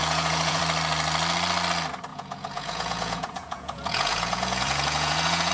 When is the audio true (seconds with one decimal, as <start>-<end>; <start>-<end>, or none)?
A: 0.6-2.1